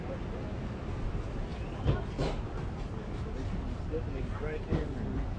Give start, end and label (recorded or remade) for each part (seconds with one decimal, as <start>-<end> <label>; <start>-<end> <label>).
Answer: 0.0-5.4 recorded